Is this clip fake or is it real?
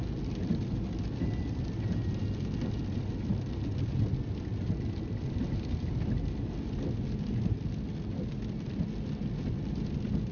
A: real